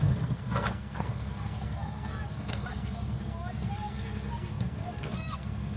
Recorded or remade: remade